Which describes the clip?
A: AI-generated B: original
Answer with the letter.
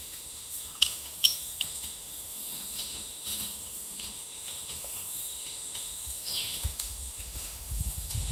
A